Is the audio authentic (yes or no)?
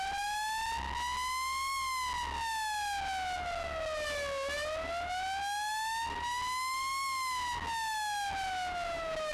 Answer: yes